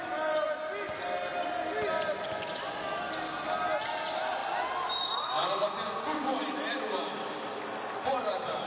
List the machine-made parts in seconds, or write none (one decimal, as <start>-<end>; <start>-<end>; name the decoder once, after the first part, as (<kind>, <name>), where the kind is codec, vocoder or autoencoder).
none